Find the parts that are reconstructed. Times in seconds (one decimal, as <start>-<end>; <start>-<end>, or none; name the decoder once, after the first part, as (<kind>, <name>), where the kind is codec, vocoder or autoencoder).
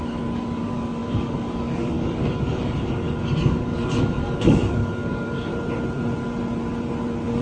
0.0-5.5 (codec, DAC)